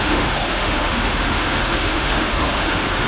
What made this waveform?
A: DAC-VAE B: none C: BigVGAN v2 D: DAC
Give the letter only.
A